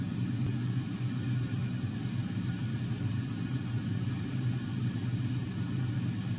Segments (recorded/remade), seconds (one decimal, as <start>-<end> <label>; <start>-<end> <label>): 0.0-6.4 recorded